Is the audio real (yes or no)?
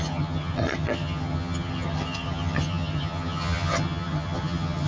no